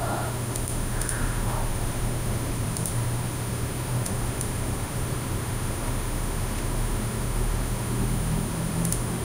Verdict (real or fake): fake